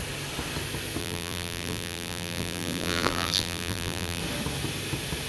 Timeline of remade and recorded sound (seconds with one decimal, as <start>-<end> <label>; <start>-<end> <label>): 0.0-1.0 recorded; 1.0-4.2 remade; 4.2-5.3 recorded